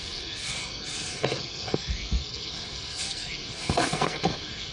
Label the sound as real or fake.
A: fake